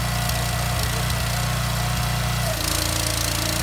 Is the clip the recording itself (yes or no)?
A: yes